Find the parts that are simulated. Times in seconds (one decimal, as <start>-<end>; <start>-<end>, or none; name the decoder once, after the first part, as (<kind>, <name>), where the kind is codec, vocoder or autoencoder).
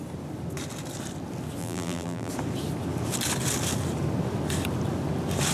1.6-2.3 (vocoder, BigVGAN v2)